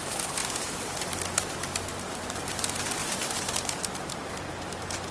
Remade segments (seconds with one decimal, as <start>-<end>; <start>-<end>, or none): 0.4-1.0; 1.9-2.5; 3.0-4.4